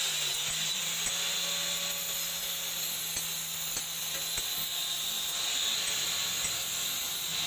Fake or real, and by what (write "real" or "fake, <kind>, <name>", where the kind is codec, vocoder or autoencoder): real